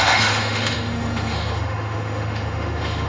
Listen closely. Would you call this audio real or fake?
fake